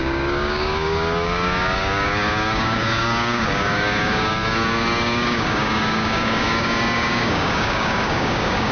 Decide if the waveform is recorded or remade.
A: remade